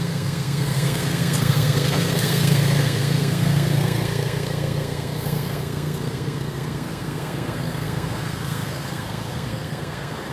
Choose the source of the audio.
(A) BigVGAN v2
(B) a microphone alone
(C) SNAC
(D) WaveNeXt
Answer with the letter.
C